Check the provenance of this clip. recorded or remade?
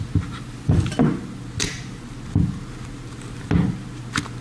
recorded